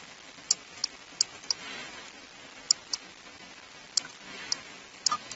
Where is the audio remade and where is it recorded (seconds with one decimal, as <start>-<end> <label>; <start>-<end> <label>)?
0.0-5.4 recorded